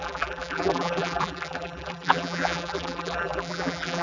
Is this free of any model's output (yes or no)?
no